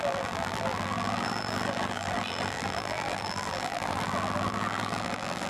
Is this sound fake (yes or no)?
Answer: yes